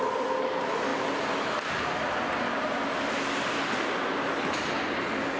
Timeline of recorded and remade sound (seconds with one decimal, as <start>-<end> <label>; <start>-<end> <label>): 0.0-5.4 recorded